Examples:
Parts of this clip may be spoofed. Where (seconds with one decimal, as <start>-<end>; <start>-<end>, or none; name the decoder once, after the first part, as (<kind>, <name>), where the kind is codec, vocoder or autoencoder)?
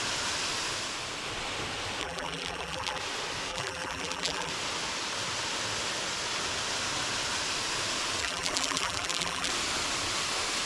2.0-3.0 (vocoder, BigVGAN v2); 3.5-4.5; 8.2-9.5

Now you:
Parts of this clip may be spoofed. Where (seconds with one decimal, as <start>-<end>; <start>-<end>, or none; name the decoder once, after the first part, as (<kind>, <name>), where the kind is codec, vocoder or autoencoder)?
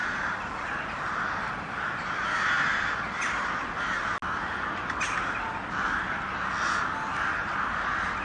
none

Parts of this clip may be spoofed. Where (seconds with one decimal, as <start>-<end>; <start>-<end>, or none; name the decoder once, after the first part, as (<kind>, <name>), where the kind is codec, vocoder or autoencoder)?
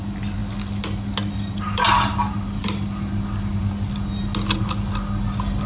none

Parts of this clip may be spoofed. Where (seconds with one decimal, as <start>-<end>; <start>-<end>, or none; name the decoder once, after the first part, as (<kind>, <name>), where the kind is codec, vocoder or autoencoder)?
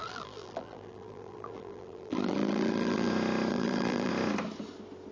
0.0-3.1 (vocoder, BigVGAN v2); 3.5-4.1